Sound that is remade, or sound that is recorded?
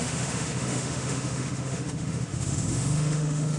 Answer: remade